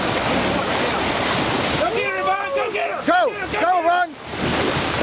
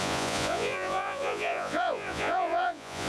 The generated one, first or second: second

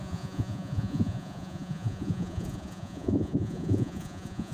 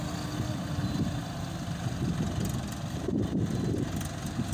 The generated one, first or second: first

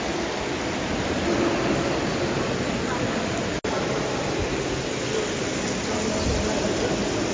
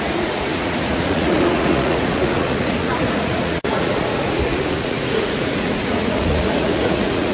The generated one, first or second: second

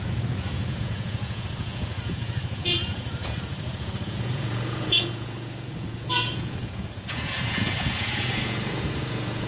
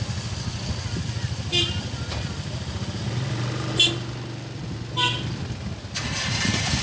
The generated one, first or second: first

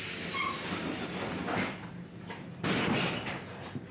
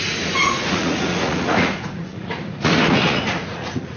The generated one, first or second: second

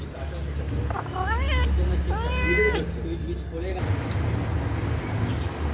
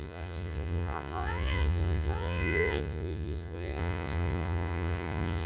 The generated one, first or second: second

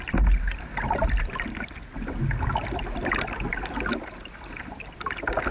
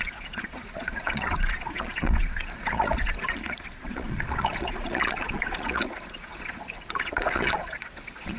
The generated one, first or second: second